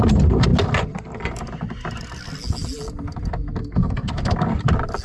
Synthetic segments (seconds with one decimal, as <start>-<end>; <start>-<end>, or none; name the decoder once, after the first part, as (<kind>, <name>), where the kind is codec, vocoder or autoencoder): 3.6-4.1 (codec, SNAC)